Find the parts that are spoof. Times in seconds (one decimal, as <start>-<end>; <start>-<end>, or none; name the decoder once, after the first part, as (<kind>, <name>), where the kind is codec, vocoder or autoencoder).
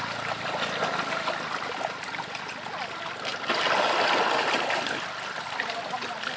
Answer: none